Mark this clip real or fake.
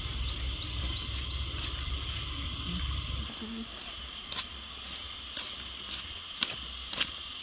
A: fake